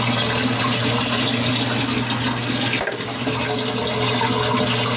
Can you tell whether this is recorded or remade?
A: recorded